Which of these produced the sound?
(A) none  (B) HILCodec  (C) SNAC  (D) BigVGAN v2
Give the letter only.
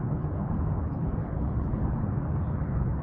B